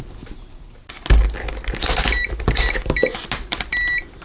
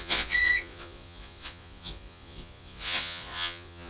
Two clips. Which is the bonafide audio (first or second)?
first